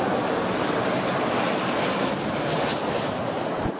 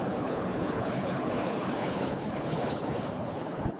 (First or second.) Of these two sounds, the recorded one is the first